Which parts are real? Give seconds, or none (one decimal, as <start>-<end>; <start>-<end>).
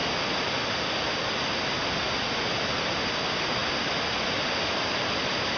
0.0-5.6